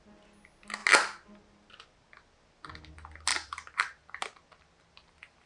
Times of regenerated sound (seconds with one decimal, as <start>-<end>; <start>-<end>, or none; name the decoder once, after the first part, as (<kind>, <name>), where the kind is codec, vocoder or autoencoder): 3.3-4.2 (vocoder, BigVGAN v2)